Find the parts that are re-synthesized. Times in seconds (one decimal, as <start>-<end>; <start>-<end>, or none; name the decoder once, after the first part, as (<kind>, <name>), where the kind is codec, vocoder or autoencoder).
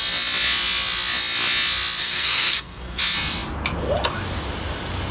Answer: 2.0-3.0 (codec, SNAC)